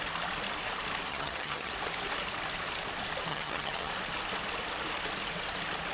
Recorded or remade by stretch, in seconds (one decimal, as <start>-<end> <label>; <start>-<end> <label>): 0.0-1.1 recorded; 1.1-1.7 remade; 1.7-3.3 recorded; 3.3-3.9 remade; 3.9-5.9 recorded